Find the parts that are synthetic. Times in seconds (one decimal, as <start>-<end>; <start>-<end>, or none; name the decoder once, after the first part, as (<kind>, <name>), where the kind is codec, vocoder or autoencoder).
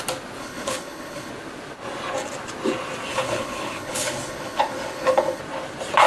0.4-1.3 (codec, HILCodec); 3.1-5.4